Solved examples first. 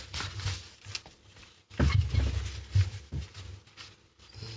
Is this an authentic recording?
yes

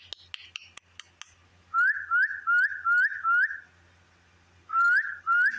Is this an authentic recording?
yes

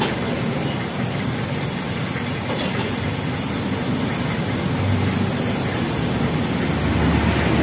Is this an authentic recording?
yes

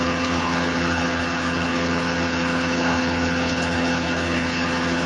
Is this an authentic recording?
no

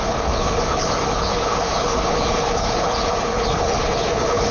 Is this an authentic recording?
no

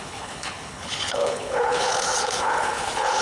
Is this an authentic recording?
no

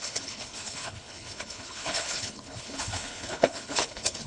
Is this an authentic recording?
no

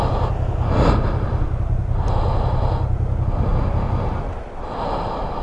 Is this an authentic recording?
yes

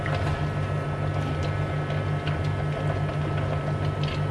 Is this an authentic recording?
yes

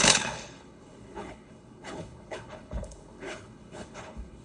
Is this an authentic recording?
no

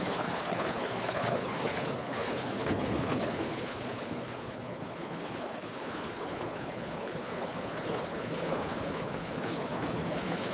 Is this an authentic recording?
no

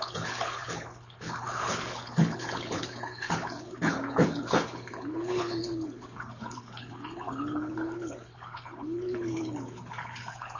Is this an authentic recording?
no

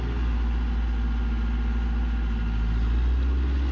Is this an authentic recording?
yes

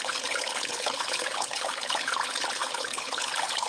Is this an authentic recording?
no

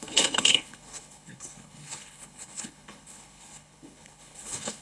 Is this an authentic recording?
no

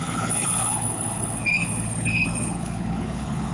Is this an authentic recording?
no